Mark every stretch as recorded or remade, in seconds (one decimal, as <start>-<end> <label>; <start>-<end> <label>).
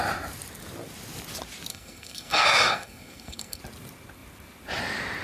0.0-1.7 recorded; 1.7-3.6 remade; 3.6-5.2 recorded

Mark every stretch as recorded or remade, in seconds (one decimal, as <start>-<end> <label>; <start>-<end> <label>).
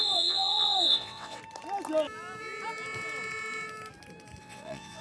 0.0-1.4 remade; 1.4-4.4 recorded; 4.4-5.0 remade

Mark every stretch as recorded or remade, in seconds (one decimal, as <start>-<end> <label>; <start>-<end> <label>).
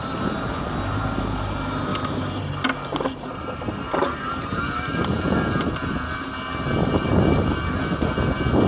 0.0-1.9 recorded; 1.9-2.5 remade; 2.5-4.2 recorded; 4.2-5.7 remade; 5.7-8.7 recorded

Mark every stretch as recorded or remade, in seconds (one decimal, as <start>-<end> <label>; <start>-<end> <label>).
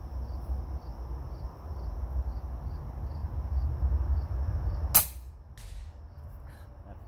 0.0-7.1 recorded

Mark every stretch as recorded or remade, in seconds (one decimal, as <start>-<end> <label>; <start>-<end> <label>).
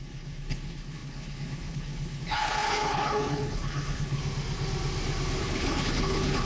0.0-4.2 remade; 4.2-5.4 recorded; 5.4-6.5 remade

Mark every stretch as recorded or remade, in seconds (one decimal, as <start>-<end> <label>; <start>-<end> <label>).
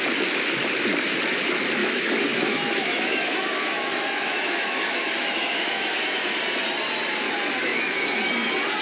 0.0-1.8 recorded; 1.8-6.0 remade; 6.0-7.7 recorded; 7.7-8.2 remade; 8.2-8.8 recorded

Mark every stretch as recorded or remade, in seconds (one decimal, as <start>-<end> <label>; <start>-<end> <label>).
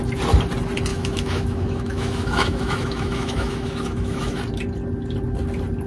0.0-0.9 recorded; 0.9-4.4 remade; 4.4-5.9 recorded